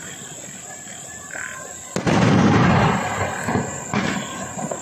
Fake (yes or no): no